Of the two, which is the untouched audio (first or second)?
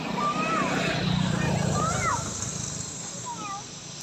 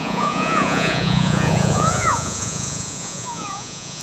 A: first